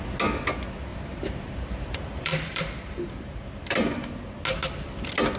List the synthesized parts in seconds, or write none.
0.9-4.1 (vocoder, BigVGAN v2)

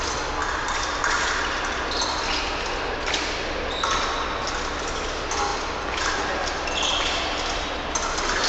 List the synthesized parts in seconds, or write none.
0.4-1.0 (vocoder, BigVGAN v2); 5.5-6.1

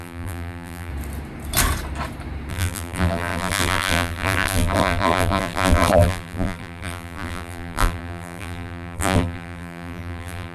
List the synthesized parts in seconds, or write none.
0.0-0.9 (vocoder, BigVGAN v2); 2.5-10.5

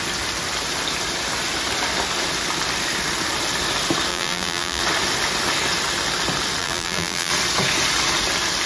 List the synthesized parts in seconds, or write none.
4.1-4.8 (vocoder, BigVGAN v2); 6.6-7.3

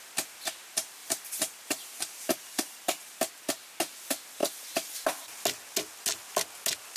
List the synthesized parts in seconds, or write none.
1.0-3.3 (vocoder, BigVGAN v2); 4.4-5.4

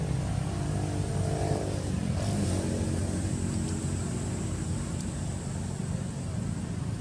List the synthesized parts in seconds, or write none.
1.1-4.9 (vocoder, BigVGAN v2)

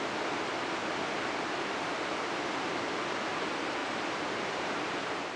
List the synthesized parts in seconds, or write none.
3.8-5.4 (vocoder, BigVGAN v2)

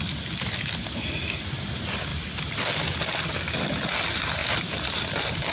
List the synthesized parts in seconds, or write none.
0.0-5.5 (vocoder, BigVGAN v2)